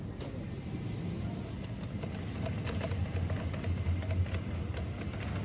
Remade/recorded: recorded